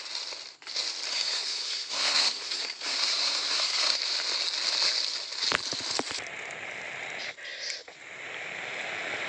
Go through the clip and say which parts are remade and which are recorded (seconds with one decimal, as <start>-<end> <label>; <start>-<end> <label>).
0.0-1.1 recorded; 1.1-4.0 remade; 4.0-9.3 recorded